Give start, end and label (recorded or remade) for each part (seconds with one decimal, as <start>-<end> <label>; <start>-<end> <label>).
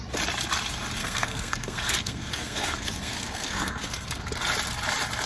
0.0-1.0 recorded; 1.0-4.2 remade; 4.2-5.3 recorded